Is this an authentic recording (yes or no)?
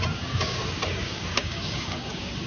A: no